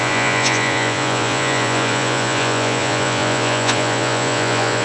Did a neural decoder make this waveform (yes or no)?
yes